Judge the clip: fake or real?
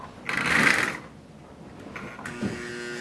real